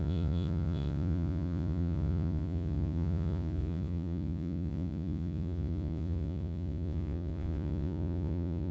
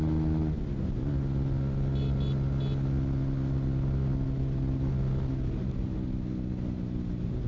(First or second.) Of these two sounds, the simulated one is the first